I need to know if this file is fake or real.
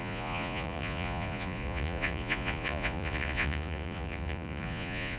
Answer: fake